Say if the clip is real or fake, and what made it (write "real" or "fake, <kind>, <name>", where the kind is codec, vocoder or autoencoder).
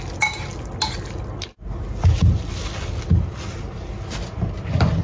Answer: real